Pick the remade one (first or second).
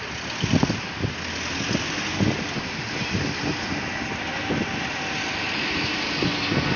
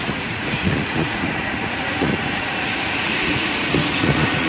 second